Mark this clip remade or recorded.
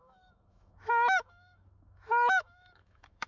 remade